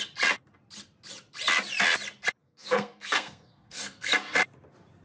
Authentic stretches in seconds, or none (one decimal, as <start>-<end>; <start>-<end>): 0.0-2.4; 4.1-5.0